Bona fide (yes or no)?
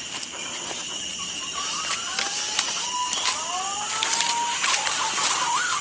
yes